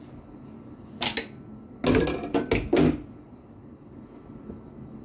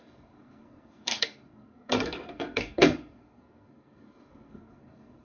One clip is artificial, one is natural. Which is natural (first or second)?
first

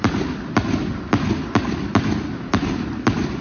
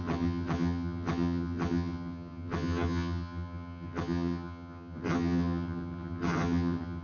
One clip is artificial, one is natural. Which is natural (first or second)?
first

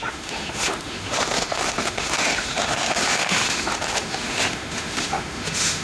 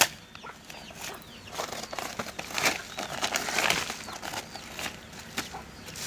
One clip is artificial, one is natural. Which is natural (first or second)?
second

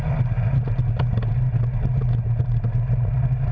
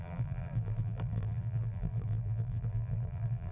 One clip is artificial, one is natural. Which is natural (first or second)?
first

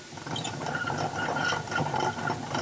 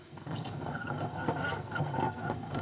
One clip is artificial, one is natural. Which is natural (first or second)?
first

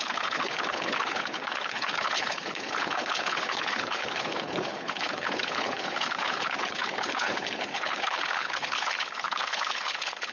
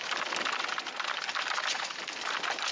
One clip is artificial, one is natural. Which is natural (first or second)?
second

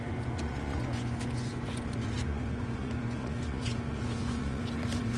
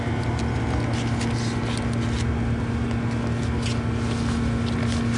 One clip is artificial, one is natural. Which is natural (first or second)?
second